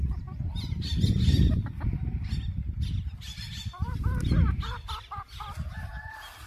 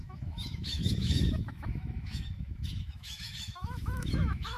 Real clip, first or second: first